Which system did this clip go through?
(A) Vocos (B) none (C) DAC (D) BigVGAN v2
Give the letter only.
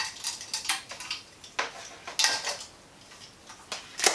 B